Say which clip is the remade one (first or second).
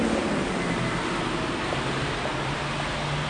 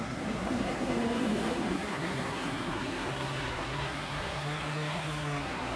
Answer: second